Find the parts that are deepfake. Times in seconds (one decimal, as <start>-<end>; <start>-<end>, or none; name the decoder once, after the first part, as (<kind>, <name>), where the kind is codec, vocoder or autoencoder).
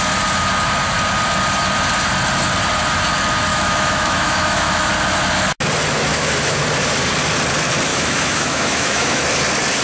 3.5-4.9 (autoencoder, DAC-VAE); 6.1-6.6; 7.9-9.2